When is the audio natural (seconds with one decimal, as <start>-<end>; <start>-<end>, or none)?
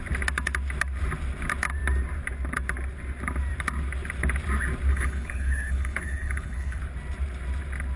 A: 0.0-4.9; 6.8-8.0